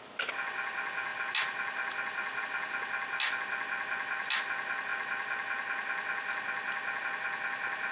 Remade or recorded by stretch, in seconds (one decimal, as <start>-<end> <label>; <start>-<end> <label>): 0.0-7.9 recorded